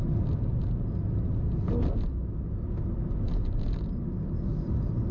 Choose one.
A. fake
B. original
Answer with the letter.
B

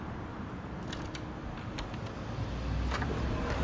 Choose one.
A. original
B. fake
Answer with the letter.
A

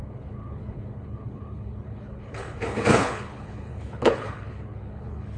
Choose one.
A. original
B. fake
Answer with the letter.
B